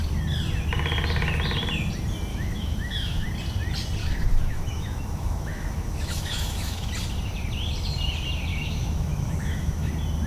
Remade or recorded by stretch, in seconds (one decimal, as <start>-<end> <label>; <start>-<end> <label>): 0.0-2.3 recorded; 2.3-3.3 remade; 3.3-4.0 recorded; 4.0-6.9 remade; 6.9-8.5 recorded; 8.5-9.9 remade; 9.9-10.3 recorded